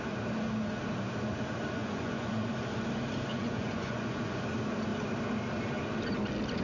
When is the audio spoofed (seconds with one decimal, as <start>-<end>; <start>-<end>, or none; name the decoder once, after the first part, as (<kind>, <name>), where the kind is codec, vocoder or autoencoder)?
1.8-2.5 (vocoder, Vocos); 3.3-4.4